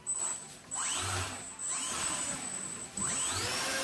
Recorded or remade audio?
recorded